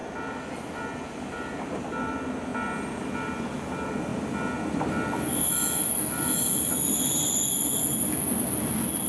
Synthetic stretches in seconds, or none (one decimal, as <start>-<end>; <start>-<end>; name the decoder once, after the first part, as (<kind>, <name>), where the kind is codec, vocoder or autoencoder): none